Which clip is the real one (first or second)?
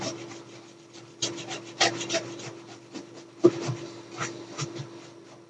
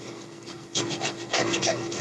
first